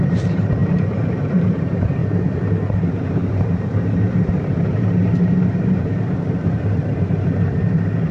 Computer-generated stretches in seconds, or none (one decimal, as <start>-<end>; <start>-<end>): 0.0-2.0; 2.8-8.1